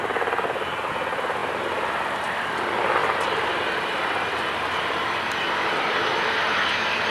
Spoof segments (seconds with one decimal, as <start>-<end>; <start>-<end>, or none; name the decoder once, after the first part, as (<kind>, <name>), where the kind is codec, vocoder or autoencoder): 1.4-2.4 (vocoder, BigVGAN v2); 3.0-3.9